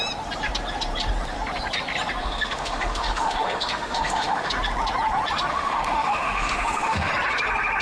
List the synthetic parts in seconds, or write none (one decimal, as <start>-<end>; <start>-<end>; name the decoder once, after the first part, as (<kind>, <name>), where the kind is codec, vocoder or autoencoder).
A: 2.2-4.5 (autoencoder, DAC-VAE); 5.5-7.1